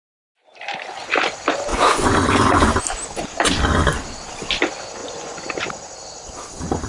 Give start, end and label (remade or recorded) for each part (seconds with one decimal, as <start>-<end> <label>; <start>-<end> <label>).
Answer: 0.0-1.7 recorded; 1.7-2.8 remade; 2.8-5.0 recorded; 5.0-5.5 remade; 5.5-6.9 recorded